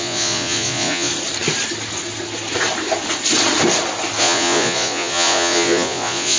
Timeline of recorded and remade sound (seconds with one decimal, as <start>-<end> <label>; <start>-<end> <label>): 0.0-1.1 remade; 1.1-4.2 recorded; 4.2-6.4 remade